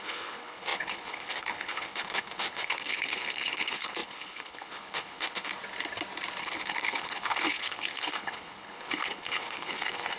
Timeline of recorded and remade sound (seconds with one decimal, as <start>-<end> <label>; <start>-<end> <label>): 0.0-5.5 remade; 5.5-6.4 recorded; 6.4-10.2 remade